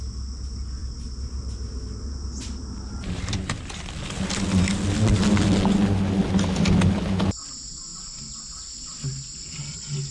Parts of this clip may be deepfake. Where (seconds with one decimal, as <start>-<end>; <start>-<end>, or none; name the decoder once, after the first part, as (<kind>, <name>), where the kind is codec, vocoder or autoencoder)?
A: 0.8-3.8 (vocoder, BigVGAN v2)